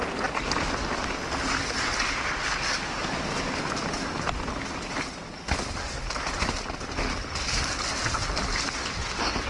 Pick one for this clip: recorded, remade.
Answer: recorded